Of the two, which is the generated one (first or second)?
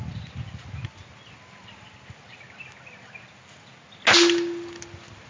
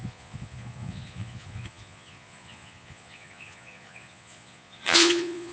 second